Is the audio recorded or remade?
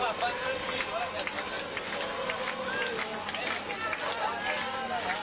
recorded